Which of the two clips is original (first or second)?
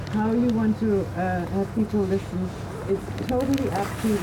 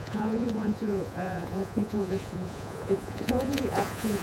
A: first